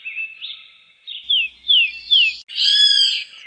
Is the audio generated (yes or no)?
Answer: no